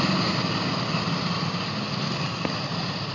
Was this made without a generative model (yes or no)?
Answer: yes